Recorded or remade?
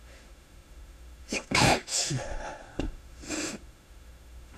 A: remade